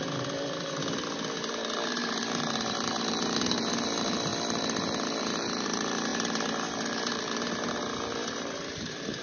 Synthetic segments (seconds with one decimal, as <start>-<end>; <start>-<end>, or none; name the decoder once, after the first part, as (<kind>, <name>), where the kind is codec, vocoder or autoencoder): 0.0-9.2 (vocoder, BigVGAN v2)